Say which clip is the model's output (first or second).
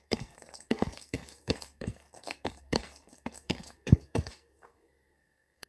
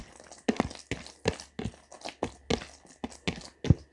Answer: first